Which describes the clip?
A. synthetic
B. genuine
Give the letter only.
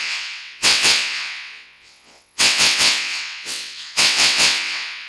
A